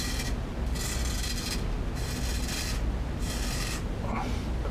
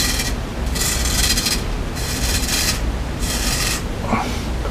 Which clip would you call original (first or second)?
first